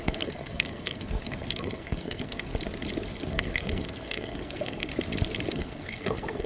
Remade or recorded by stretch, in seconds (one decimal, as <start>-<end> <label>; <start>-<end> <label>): 0.0-2.5 remade; 2.5-3.3 recorded; 3.3-4.9 remade; 4.9-5.5 recorded; 5.5-6.5 remade